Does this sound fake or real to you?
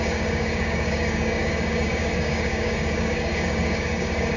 fake